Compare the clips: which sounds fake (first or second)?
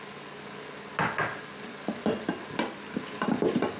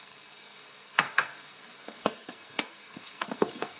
second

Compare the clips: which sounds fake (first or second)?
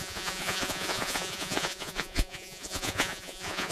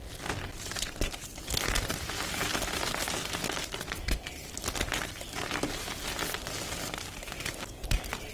first